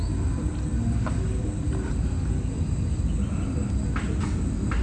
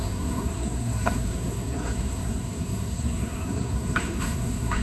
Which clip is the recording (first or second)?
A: first